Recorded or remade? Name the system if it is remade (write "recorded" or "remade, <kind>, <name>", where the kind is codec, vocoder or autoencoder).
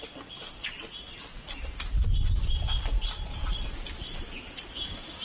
recorded